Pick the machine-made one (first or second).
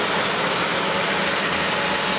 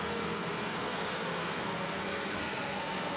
second